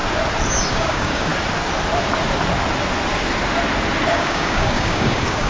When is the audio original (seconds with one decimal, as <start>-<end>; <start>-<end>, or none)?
0.0-0.7; 1.3-4.1